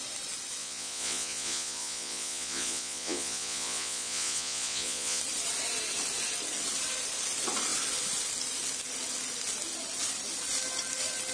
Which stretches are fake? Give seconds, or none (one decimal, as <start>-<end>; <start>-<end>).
0.6-5.2